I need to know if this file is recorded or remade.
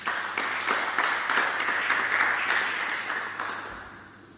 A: recorded